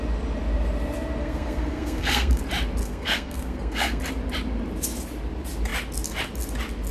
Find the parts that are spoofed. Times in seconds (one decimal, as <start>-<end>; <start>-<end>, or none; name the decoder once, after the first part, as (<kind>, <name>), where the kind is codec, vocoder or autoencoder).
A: 1.2-2.4 (codec, SNAC); 2.8-4.0